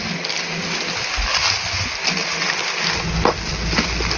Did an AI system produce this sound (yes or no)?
no